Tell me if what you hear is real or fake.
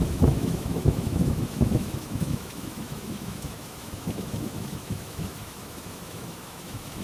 fake